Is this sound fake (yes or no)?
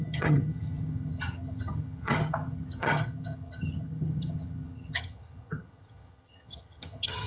yes